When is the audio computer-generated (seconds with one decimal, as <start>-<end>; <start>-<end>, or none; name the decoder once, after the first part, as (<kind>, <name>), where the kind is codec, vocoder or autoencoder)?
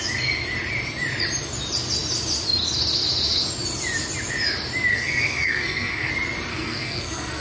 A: 4.9-6.1 (codec, SNAC); 6.5-7.4